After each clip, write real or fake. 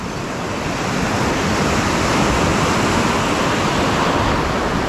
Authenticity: real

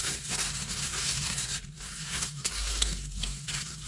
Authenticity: fake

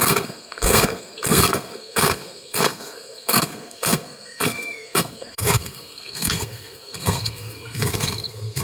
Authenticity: fake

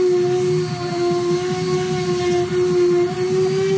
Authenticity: real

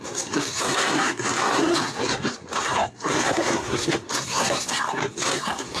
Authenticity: fake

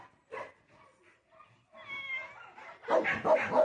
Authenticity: real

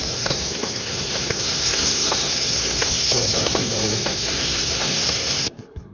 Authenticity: fake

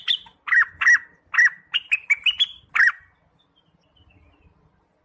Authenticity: real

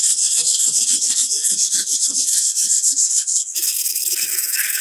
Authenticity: fake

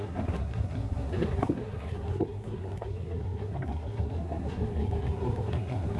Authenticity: fake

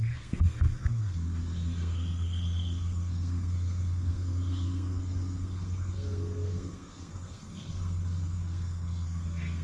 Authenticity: fake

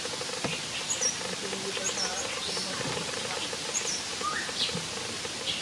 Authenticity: real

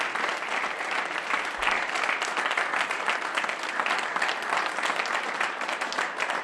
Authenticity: real